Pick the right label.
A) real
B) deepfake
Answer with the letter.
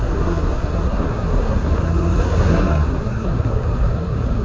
B